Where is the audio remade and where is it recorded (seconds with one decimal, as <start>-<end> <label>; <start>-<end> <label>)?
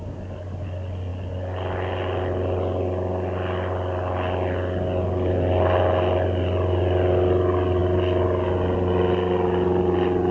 0.0-10.3 recorded